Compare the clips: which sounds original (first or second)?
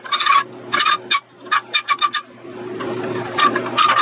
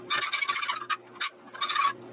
second